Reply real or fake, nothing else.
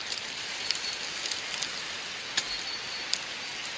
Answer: real